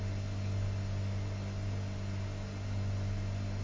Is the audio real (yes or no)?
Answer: yes